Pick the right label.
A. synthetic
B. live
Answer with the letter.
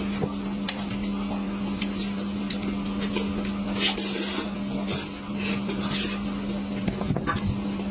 B